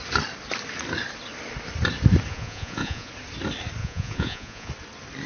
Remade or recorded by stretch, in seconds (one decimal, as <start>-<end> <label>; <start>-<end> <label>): 0.0-2.3 recorded; 2.3-3.1 remade; 3.1-3.8 recorded; 3.8-4.7 remade; 4.7-5.3 recorded